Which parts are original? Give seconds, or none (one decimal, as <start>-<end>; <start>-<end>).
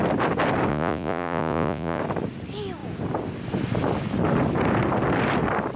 0.0-0.7; 2.0-5.8